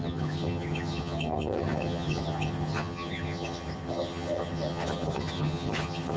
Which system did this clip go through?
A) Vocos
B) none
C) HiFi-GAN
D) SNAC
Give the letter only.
C